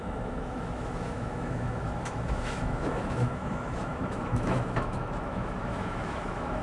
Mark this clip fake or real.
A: fake